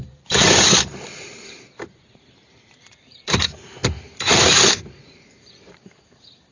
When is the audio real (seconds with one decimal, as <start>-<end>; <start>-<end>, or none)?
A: none